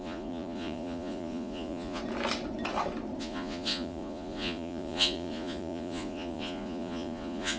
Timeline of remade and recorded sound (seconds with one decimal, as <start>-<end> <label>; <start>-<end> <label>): 0.0-2.0 remade; 2.0-3.2 recorded; 3.2-7.6 remade